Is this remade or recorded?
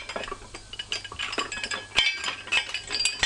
recorded